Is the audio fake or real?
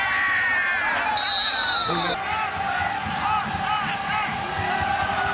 real